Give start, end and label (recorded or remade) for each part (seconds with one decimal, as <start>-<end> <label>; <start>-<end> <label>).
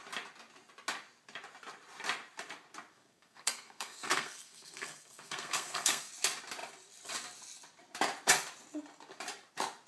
0.0-2.9 recorded; 2.9-6.1 remade; 6.1-9.9 recorded